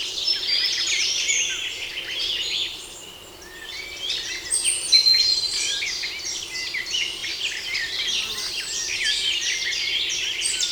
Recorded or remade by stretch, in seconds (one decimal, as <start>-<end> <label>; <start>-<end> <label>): 0.0-5.5 recorded; 5.5-6.1 remade; 6.1-7.2 recorded; 7.2-7.9 remade; 7.9-10.7 recorded